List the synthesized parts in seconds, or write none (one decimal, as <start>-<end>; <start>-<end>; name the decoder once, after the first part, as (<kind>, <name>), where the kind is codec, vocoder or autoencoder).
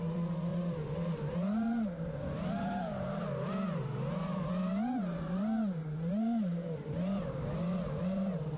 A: 0.5-3.2 (vocoder, BigVGAN v2); 4.3-8.0